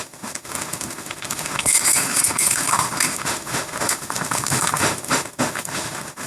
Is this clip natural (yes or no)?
no